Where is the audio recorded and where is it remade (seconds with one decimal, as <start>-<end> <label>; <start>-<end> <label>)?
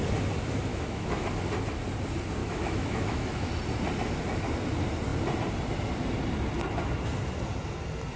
0.0-0.7 recorded; 0.7-1.3 remade; 1.3-2.4 recorded; 2.4-3.5 remade; 3.5-8.2 recorded